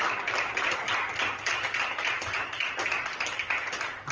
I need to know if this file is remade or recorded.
recorded